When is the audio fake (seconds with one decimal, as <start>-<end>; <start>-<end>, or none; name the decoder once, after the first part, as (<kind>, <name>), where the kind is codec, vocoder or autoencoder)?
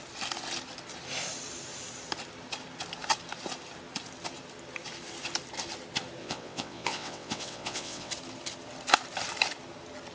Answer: 6.2-8.1 (vocoder, WaveNeXt)